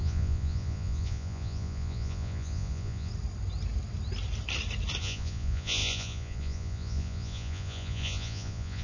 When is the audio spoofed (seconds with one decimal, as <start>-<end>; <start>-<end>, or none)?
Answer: 0.0-3.1; 5.0-8.8